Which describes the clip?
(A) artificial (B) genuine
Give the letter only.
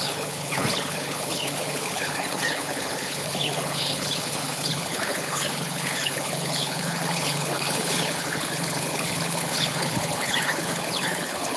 A